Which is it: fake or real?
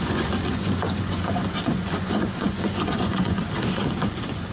fake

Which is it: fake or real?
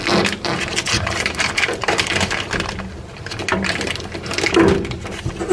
real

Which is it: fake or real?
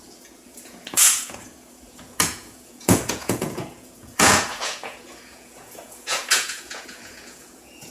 fake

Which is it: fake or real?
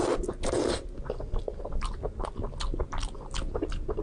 real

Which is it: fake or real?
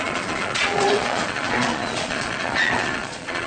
fake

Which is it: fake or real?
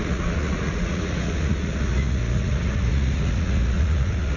fake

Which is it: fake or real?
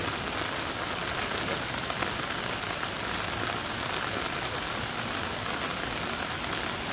real